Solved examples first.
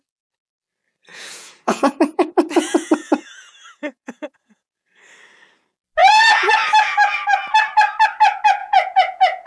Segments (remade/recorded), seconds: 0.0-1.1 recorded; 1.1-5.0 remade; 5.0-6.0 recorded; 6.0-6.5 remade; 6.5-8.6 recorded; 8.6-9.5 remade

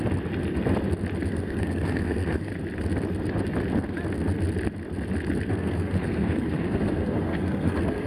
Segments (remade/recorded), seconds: 0.0-1.3 recorded; 1.3-2.5 remade; 2.5-5.5 recorded; 5.5-8.1 remade